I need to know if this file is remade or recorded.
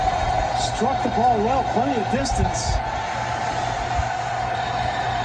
recorded